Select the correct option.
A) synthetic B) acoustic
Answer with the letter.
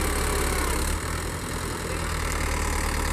B